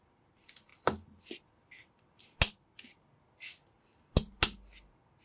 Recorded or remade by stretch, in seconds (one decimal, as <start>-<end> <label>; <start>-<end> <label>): 0.0-5.2 recorded